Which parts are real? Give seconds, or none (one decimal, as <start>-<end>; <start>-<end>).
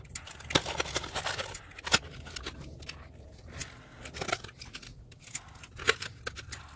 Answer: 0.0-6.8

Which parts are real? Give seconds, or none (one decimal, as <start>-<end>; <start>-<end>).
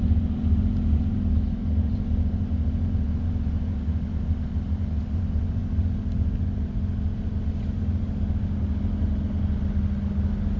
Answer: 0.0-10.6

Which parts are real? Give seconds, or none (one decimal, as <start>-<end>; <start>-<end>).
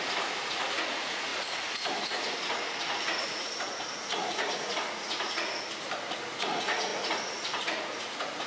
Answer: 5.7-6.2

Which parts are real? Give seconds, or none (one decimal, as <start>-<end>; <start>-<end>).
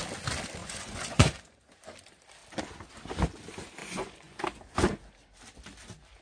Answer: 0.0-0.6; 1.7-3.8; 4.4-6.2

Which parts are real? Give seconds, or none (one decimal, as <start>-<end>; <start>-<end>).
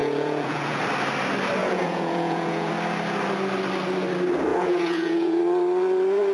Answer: 0.8-1.6; 2.7-4.5; 5.4-6.3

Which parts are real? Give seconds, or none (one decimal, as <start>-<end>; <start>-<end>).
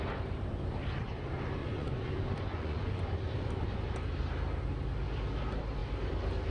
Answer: 0.0-1.6; 2.1-2.5; 3.0-6.5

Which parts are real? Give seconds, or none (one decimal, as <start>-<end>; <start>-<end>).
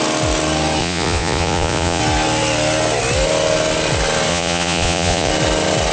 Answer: 0.0-0.8; 2.0-4.3; 5.3-5.9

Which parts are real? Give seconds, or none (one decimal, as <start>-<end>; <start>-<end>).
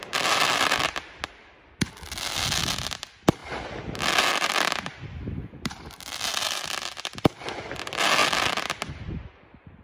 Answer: 0.0-9.8